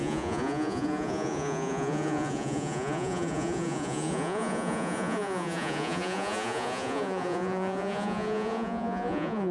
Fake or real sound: fake